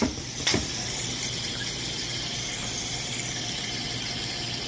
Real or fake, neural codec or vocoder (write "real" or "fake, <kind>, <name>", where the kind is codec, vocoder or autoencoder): real